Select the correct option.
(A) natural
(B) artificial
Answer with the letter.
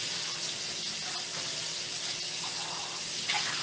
A